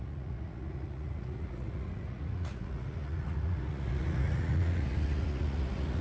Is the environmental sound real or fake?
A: fake